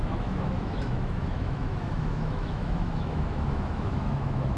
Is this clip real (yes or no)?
no